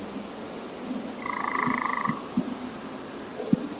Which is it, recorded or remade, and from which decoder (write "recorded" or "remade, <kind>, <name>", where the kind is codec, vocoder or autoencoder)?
recorded